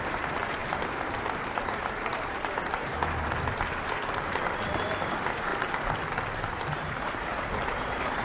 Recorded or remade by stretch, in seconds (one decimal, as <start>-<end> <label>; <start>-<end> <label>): 0.0-0.6 remade; 0.6-1.5 recorded; 1.5-5.5 remade; 5.5-6.3 recorded; 6.3-8.2 remade